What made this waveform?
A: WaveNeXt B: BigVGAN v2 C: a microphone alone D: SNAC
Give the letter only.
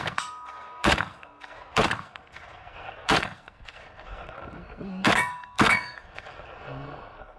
D